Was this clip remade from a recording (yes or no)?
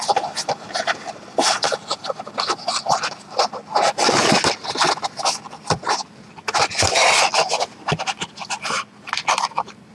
no